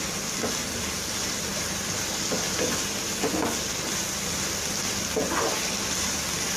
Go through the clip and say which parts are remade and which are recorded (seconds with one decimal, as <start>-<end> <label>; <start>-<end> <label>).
0.0-6.6 recorded